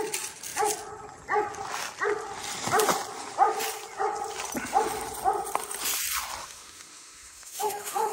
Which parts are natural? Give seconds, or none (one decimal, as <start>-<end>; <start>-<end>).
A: 0.0-6.4